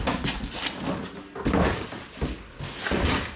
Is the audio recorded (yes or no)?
yes